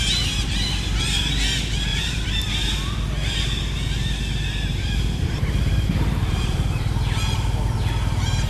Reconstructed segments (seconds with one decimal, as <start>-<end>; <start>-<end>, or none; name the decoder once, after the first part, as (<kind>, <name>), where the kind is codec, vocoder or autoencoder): 1.9-2.5 (vocoder, BigVGAN v2); 4.7-7.0